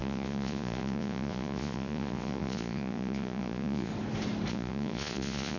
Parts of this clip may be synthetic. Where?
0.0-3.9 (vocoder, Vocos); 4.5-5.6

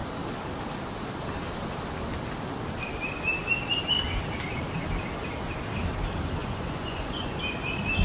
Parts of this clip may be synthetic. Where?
6.4-7.4 (vocoder, Vocos)

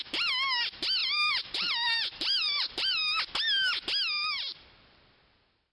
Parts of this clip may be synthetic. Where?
1.0-3.0 (vocoder, BigVGAN v2)

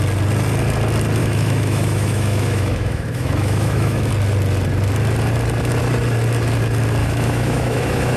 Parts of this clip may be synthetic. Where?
1.2-4.1 (autoencoder, DAC-VAE); 7.0-8.2

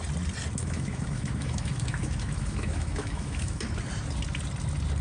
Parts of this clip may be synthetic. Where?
0.6-3.6 (autoencoder, DAC-VAE)

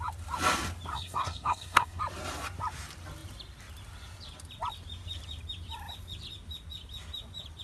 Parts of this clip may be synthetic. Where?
0.9-2.0 (codec, SNAC)